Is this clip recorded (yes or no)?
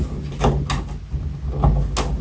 yes